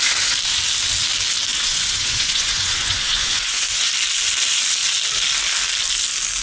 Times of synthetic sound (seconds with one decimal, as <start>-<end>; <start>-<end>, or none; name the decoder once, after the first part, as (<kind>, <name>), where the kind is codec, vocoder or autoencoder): 1.5-3.9 (vocoder, Vocos)